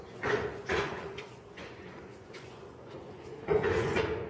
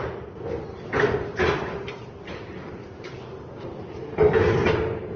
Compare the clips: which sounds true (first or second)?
second